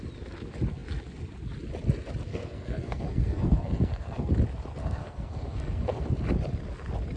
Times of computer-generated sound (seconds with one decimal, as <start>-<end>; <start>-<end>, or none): 2.3-4.3; 4.8-6.1

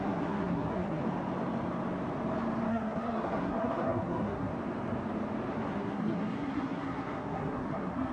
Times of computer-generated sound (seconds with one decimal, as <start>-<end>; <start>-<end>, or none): 0.0-1.0; 2.7-4.5; 5.5-8.1

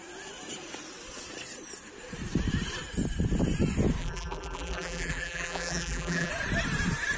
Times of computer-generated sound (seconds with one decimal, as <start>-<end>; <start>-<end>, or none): 4.0-6.3

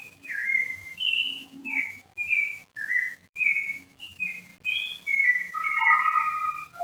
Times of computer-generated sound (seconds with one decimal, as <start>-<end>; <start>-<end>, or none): 0.0-4.5; 5.2-5.7

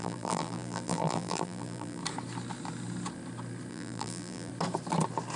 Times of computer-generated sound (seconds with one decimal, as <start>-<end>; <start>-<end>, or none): 0.0-2.0; 3.7-4.5

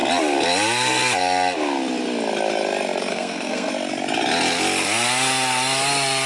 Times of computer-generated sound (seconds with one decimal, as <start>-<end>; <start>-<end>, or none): 3.1-3.7